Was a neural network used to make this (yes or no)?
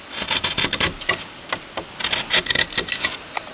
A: no